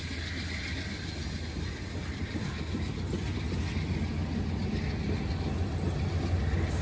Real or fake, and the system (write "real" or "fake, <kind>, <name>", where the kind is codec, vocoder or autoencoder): real